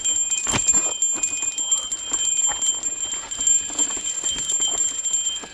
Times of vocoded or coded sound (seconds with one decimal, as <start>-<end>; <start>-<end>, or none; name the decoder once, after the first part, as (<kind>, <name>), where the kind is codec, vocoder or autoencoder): none